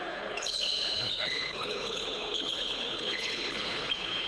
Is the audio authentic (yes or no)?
no